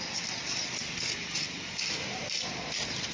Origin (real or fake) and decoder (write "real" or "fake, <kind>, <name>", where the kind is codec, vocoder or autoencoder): real